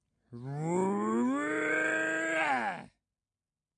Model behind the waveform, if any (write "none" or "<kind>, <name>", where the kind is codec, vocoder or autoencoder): none